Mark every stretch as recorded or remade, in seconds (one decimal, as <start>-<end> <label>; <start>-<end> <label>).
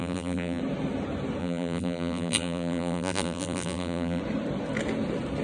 0.0-0.6 remade; 0.6-1.4 recorded; 1.4-4.2 remade; 4.2-5.4 recorded